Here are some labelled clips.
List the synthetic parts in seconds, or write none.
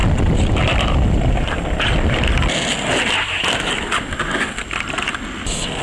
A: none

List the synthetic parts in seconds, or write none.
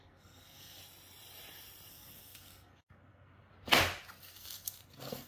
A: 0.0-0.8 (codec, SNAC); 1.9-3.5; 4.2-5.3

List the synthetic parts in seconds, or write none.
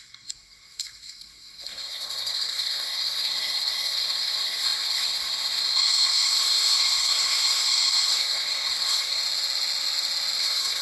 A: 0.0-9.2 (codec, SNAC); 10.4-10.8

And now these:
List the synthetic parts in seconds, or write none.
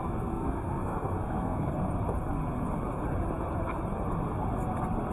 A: 0.0-1.7 (codec, SNAC)